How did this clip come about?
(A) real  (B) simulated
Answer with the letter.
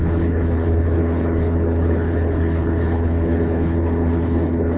B